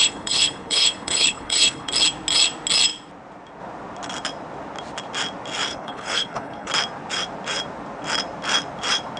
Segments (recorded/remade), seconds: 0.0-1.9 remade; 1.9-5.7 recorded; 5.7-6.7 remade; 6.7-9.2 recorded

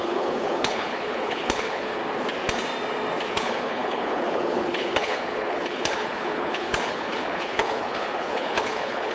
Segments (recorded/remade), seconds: 0.0-2.0 remade; 2.0-3.3 recorded; 3.3-9.1 remade

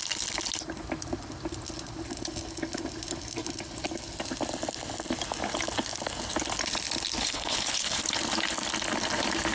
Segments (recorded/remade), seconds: 0.0-7.2 recorded; 7.2-8.0 remade; 8.0-9.5 recorded

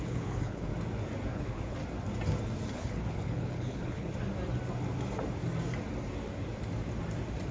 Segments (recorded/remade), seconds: 0.0-0.7 remade; 0.7-1.3 recorded; 1.3-1.8 remade; 1.8-2.7 recorded; 2.7-4.1 remade; 4.1-7.5 recorded

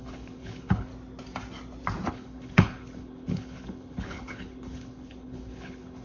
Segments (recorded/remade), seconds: 0.0-0.9 remade; 0.9-2.1 recorded; 2.1-6.0 remade

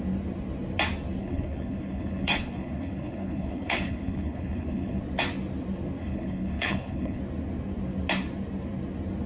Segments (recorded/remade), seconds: 0.0-1.2 recorded; 1.2-5.0 remade; 5.0-6.0 recorded; 6.0-7.2 remade; 7.2-9.3 recorded